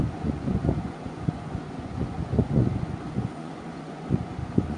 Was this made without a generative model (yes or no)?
no